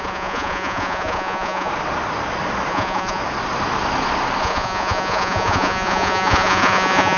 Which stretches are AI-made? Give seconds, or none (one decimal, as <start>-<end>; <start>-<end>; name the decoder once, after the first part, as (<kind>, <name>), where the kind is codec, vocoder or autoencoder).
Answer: 0.0-1.7 (vocoder, Vocos); 2.7-3.2; 4.4-7.2